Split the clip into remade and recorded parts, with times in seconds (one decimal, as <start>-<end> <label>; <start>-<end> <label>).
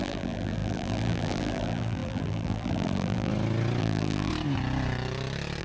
0.0-3.3 remade; 3.3-3.8 recorded; 3.8-4.3 remade; 4.3-5.6 recorded